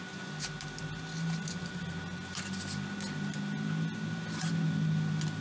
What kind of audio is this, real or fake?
real